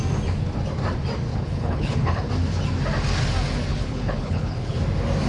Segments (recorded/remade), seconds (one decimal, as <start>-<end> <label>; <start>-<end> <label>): 0.0-1.3 recorded; 1.3-2.3 remade; 2.3-3.7 recorded; 3.7-4.8 remade; 4.8-5.3 recorded